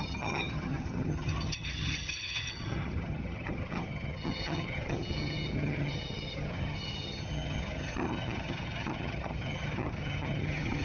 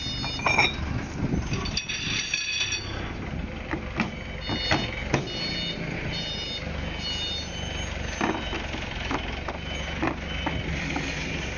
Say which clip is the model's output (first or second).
first